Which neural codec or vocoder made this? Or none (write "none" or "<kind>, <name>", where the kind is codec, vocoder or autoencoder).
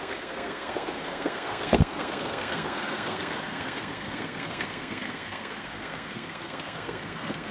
codec, SNAC